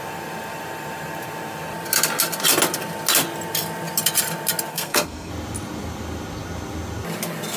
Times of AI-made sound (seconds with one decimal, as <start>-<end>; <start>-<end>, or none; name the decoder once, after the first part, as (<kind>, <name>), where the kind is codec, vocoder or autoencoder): 4.7-5.3 (codec, SNAC)